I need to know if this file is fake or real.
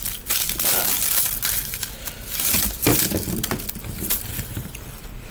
real